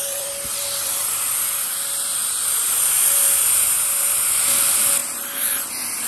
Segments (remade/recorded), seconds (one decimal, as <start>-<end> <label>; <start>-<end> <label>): 0.0-1.1 remade; 1.1-6.1 recorded